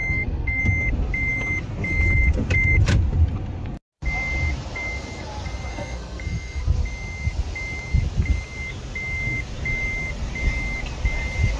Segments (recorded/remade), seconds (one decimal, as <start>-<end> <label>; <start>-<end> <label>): 0.0-0.6 remade; 0.6-5.7 recorded; 5.7-6.6 remade; 6.6-11.6 recorded